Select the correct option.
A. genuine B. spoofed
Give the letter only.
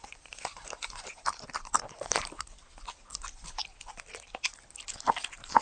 A